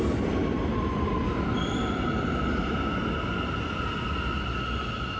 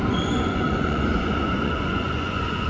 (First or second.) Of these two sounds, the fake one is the second